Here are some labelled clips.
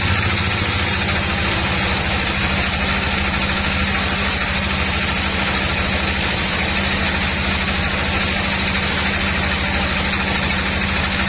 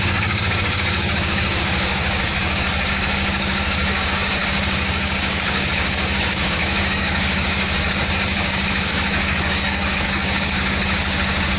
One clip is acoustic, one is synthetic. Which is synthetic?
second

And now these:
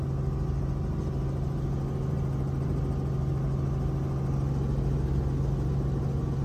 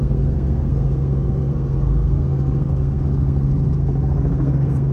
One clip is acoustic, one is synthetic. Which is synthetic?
second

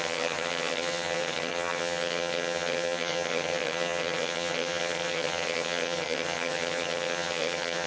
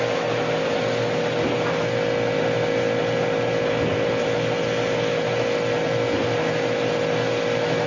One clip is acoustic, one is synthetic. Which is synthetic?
first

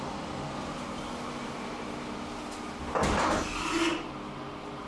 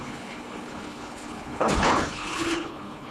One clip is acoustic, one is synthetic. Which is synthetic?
second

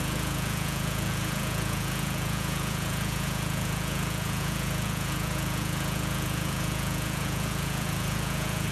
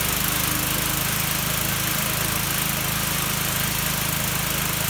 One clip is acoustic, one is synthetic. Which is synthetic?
first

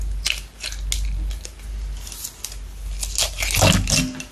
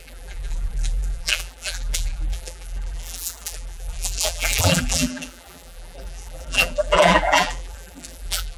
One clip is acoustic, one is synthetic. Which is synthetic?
second